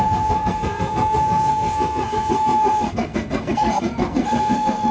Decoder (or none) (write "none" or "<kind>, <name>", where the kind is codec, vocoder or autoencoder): codec, SNAC